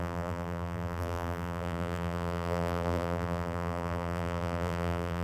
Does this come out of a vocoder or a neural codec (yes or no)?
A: yes